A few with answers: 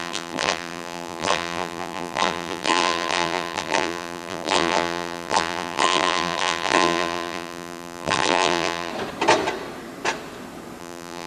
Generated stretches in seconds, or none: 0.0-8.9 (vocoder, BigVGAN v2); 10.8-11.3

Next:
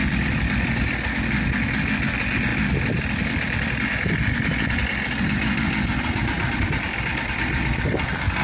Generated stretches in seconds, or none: 0.0-0.8 (vocoder, BigVGAN v2); 7.1-8.0

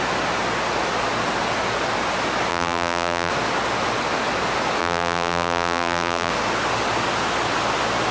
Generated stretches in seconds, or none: 2.5-3.3 (vocoder, BigVGAN v2); 4.8-6.3